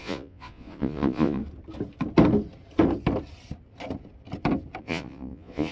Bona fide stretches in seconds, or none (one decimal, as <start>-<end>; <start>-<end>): 1.4-4.8

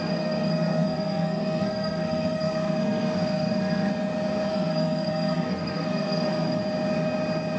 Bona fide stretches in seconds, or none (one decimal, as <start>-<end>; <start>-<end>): 3.9-4.5; 6.6-7.6

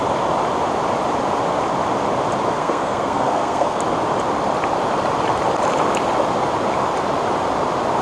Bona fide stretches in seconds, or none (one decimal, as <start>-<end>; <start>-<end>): 0.0-2.6; 3.8-8.0

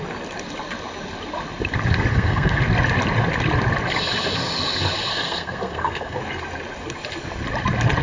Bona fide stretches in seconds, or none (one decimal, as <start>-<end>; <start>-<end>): 0.0-2.1; 2.6-5.1; 6.2-8.0

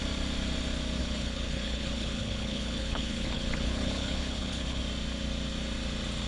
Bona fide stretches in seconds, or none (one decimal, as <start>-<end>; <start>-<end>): 0.0-1.0; 4.8-6.3